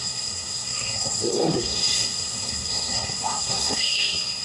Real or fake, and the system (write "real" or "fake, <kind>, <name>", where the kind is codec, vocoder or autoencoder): fake, codec, SNAC